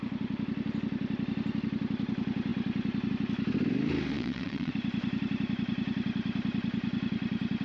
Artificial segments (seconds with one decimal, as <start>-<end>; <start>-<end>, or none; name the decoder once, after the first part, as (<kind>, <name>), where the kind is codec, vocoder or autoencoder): 4.1-4.7 (vocoder, Vocos)